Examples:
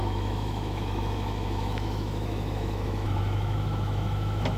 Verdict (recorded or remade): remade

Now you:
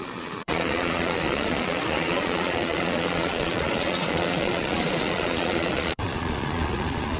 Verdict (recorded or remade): remade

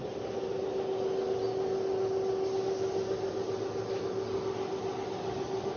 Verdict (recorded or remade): recorded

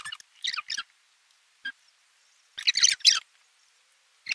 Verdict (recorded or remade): recorded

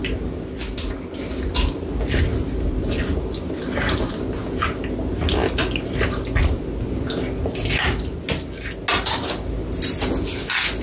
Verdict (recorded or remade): recorded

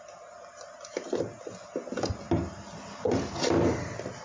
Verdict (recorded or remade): recorded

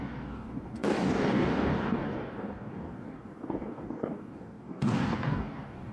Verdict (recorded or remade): remade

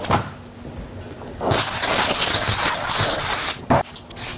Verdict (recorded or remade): recorded